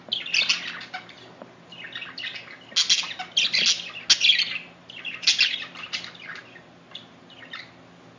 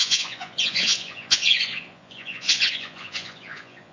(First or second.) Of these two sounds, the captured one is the first